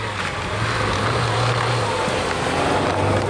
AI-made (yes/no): no